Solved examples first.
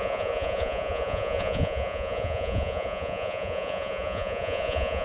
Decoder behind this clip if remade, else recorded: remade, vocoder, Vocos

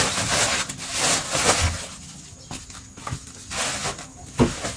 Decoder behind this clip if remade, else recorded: recorded